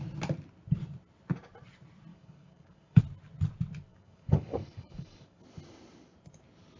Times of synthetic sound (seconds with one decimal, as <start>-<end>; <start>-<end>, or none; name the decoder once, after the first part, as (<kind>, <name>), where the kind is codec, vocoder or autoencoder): 2.1-3.0 (codec, DAC); 3.9-5.4